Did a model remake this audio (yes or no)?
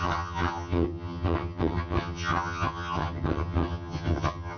yes